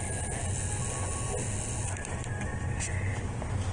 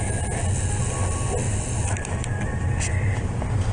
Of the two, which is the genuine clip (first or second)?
first